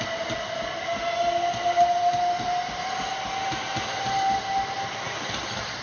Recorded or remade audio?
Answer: recorded